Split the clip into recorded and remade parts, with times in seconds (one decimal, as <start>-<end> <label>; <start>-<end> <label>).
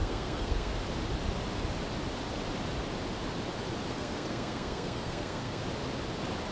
0.0-0.7 remade; 0.7-3.9 recorded; 3.9-5.6 remade; 5.6-6.5 recorded